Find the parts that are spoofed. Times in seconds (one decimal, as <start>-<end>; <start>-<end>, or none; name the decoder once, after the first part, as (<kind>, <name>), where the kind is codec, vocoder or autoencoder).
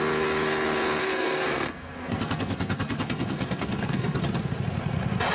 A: 1.0-4.2 (codec, SNAC)